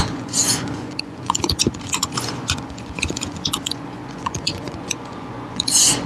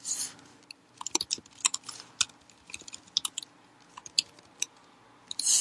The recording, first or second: second